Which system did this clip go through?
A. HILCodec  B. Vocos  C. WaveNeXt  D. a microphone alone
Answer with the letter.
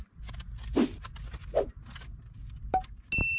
D